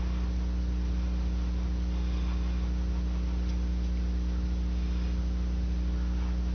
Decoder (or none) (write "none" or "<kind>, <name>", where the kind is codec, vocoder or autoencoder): none